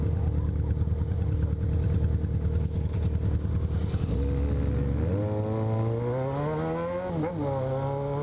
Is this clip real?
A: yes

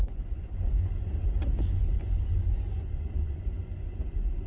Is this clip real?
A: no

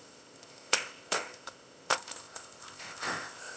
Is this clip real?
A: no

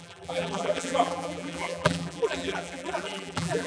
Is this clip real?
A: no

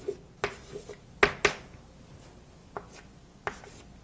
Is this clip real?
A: yes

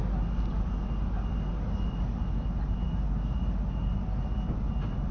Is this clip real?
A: yes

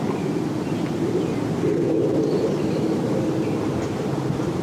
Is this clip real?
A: yes